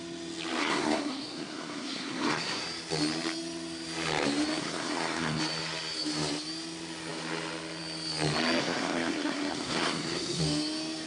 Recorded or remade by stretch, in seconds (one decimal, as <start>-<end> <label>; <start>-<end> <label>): 0.0-0.6 recorded; 0.6-2.6 remade; 2.6-4.6 recorded; 4.6-5.4 remade; 5.4-8.6 recorded; 8.6-10.4 remade; 10.4-11.1 recorded